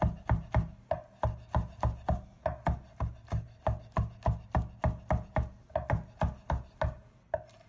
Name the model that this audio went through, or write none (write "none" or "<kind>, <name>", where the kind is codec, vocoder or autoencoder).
none